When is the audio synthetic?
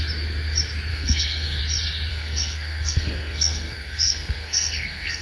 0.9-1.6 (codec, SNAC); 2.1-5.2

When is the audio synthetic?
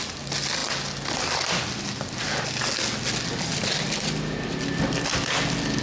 none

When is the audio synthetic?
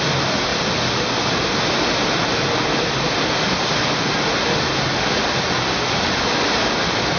none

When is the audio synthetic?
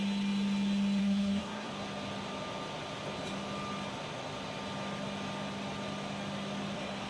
1.0-1.7 (codec, SNAC)